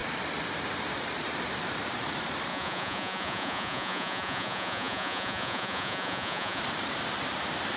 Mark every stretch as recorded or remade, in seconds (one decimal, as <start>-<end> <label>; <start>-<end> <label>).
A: 0.0-2.5 recorded; 2.5-6.6 remade; 6.6-7.8 recorded